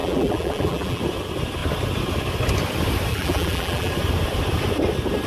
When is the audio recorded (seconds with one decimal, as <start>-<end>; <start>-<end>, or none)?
1.0-3.1; 3.9-5.3